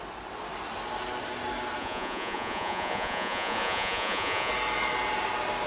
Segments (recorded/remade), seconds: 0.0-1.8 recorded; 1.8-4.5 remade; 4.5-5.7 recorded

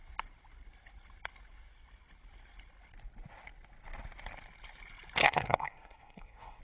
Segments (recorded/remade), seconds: 0.0-5.2 recorded; 5.2-6.6 remade

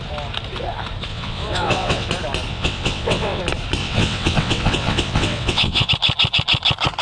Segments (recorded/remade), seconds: 0.0-1.1 recorded; 1.1-2.1 remade; 2.1-2.5 recorded; 2.5-3.4 remade; 3.4-3.8 recorded; 3.8-5.9 remade; 5.9-7.0 recorded

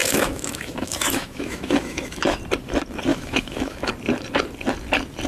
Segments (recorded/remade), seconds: 0.0-2.4 remade; 2.4-3.1 recorded; 3.1-3.9 remade; 3.9-5.3 recorded

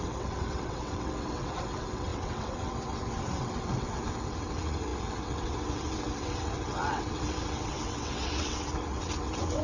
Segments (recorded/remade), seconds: 0.0-9.6 remade

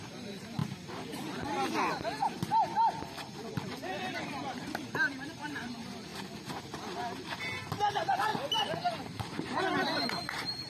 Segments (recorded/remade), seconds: 0.0-0.6 remade; 0.6-4.3 recorded; 4.3-6.1 remade; 6.1-7.4 recorded; 7.4-8.3 remade; 8.3-8.9 recorded; 8.9-10.7 remade